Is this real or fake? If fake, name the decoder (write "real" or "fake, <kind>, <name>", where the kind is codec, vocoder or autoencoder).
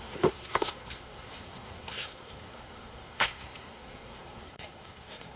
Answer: fake, codec, SNAC